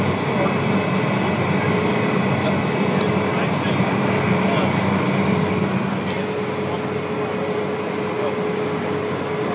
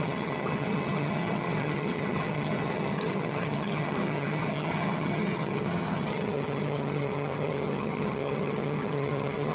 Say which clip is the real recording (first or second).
first